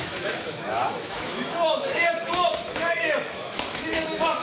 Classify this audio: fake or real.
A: fake